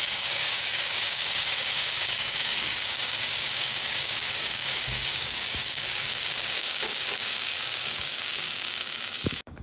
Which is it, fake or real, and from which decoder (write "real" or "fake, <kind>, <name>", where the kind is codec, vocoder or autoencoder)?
fake, codec, DAC